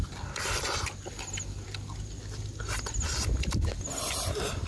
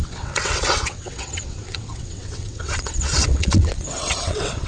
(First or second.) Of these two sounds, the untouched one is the first